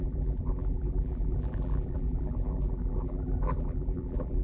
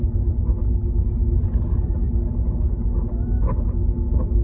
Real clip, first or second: second